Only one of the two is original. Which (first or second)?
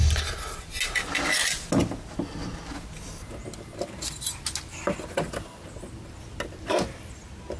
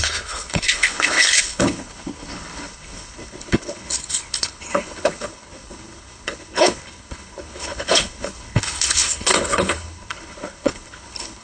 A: first